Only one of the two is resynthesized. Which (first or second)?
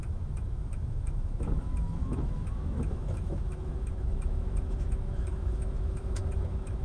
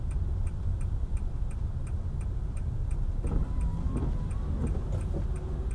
first